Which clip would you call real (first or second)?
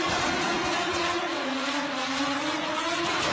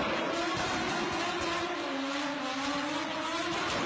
second